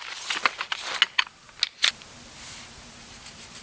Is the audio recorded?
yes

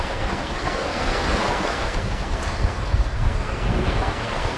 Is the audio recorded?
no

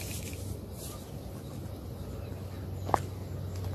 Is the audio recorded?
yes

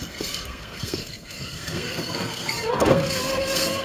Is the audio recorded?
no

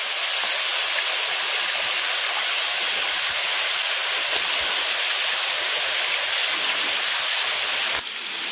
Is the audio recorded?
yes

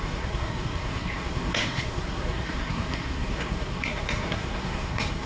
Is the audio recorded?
no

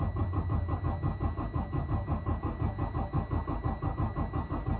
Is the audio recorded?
yes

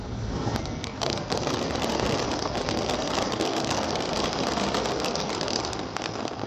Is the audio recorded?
no